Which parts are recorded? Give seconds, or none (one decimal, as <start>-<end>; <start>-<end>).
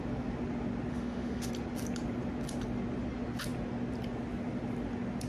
0.0-0.9; 1.5-5.3